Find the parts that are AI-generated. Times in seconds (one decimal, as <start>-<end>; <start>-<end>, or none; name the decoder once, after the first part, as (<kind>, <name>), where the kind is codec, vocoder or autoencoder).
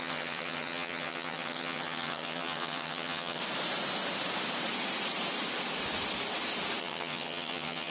0.0-3.4 (vocoder, HiFi-GAN); 6.8-7.9